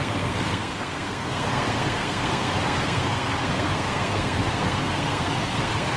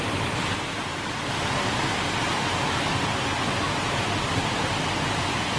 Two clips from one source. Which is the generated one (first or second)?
first